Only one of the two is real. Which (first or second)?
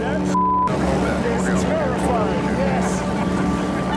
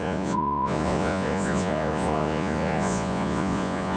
first